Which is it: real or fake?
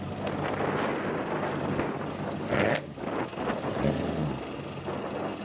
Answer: real